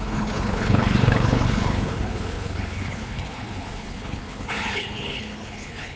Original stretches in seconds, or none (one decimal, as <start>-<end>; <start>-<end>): none